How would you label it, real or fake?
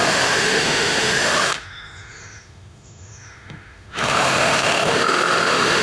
fake